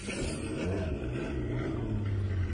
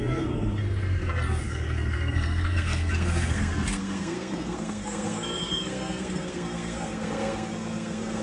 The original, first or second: first